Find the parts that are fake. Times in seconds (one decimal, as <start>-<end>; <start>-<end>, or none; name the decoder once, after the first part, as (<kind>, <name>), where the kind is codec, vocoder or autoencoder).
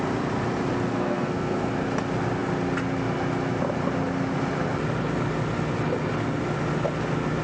0.9-1.7 (codec, SNAC)